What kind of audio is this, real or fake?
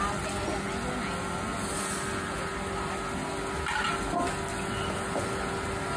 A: real